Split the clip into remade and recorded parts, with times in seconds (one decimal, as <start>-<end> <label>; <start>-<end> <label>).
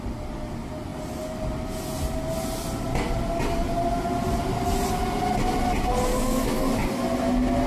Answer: 0.0-6.1 recorded; 6.1-6.9 remade; 6.9-7.7 recorded